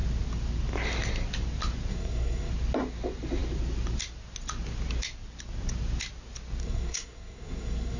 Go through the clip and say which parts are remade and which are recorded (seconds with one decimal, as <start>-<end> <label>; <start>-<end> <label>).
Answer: 0.0-1.9 recorded; 1.9-2.5 remade; 2.5-6.6 recorded; 6.6-8.0 remade